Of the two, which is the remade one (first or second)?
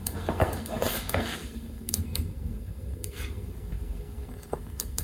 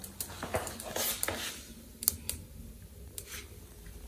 first